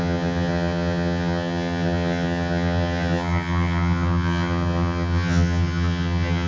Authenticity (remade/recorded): remade